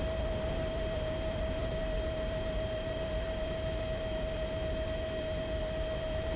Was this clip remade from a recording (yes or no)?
yes